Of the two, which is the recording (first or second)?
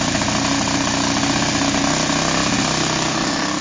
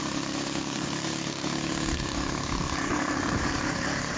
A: first